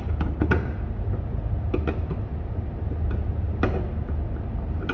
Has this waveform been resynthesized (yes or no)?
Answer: no